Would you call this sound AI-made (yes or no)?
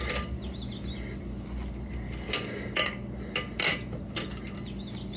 no